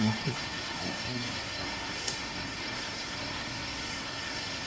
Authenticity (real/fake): fake